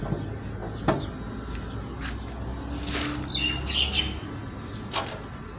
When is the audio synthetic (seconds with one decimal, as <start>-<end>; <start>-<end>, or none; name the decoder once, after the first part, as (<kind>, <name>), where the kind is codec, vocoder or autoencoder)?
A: none